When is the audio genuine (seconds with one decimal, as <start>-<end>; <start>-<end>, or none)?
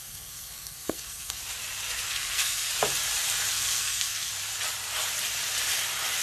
1.4-2.1; 2.7-3.5; 4.3-6.2